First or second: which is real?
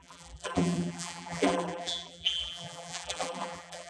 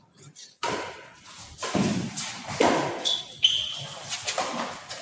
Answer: second